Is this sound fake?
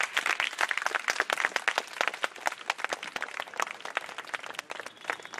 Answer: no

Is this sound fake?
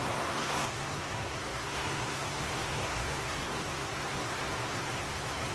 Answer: yes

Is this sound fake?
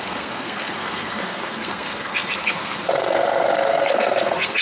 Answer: yes